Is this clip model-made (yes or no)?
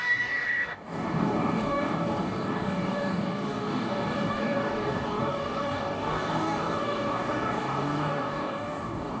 yes